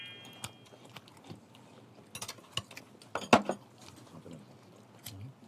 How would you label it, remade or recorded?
recorded